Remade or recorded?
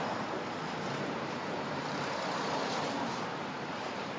remade